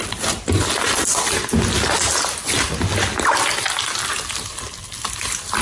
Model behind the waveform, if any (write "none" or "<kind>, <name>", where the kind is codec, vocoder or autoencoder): none